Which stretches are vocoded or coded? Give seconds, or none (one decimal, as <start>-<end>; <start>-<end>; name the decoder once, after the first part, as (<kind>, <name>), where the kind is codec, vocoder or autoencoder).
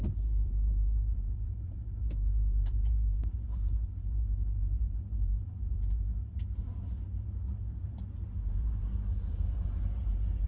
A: 0.0-10.5 (vocoder, BigVGAN v2)